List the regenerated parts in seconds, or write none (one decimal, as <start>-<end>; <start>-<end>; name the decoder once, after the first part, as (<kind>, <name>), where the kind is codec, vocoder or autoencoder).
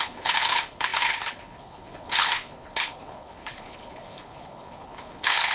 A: 0.0-5.5 (codec, HILCodec)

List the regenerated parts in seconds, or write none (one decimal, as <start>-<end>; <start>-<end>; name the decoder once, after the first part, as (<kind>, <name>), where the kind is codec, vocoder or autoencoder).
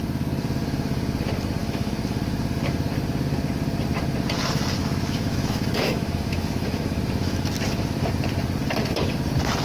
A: 1.6-2.2 (autoencoder, DAC-VAE); 4.8-7.5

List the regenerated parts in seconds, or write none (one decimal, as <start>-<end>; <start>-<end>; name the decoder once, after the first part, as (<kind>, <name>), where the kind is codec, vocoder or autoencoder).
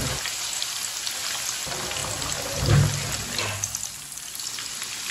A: 0.0-0.6 (vocoder, BigVGAN v2)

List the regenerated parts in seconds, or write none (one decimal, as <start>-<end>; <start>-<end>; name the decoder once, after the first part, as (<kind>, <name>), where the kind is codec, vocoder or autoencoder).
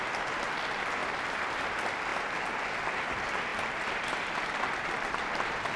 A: 1.0-1.7 (vocoder, BigVGAN v2); 3.5-5.8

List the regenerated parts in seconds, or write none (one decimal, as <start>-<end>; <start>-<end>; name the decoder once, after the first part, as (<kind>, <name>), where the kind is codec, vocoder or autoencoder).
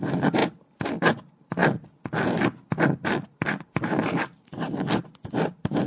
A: 0.0-1.6 (vocoder, BigVGAN v2); 3.7-5.9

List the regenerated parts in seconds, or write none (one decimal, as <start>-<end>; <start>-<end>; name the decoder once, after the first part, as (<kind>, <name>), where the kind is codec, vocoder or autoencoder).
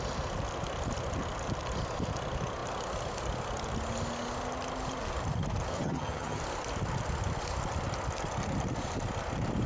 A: 5.7-6.4 (vocoder, HiFi-GAN)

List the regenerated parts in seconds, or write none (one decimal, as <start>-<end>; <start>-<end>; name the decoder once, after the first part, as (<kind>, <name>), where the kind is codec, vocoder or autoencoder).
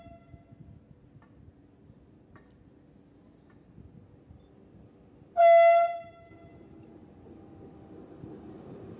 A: 8.0-9.0 (vocoder, BigVGAN v2)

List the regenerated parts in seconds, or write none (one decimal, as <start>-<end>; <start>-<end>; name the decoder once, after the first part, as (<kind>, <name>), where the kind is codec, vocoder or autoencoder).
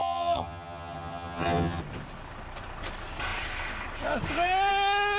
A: 0.0-1.8 (vocoder, HiFi-GAN)